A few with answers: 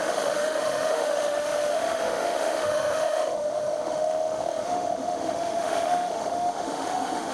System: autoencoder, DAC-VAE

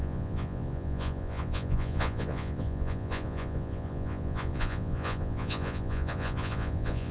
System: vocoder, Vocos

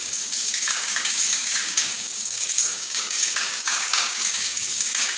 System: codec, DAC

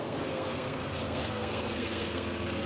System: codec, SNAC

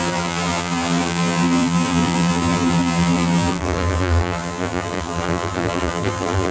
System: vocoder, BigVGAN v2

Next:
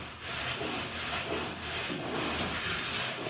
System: none